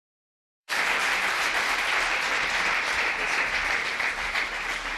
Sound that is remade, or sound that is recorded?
remade